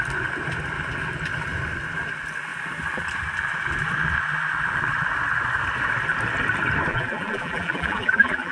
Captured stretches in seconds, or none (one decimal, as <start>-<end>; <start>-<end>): 0.0-6.9